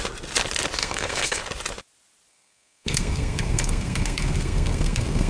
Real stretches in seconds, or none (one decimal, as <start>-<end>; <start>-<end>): 0.0-0.8; 1.4-2.3